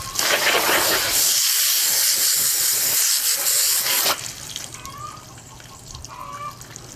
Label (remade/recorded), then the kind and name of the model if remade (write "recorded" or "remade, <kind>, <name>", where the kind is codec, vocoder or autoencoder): recorded